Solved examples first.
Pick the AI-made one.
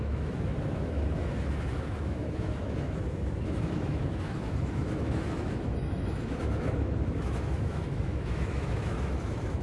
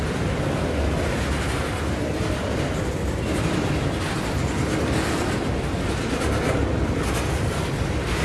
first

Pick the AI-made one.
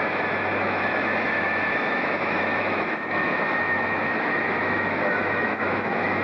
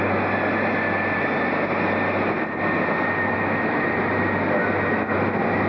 first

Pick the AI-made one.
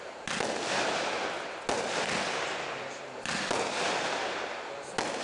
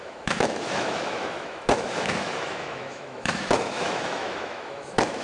second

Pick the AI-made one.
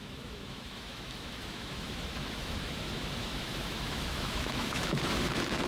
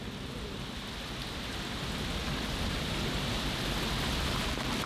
first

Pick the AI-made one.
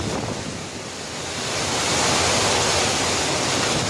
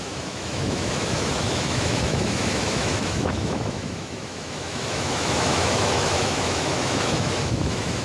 second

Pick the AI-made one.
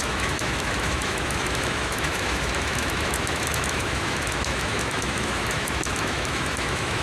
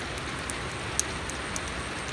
first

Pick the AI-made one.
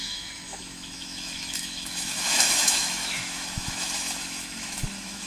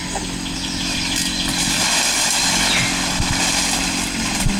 first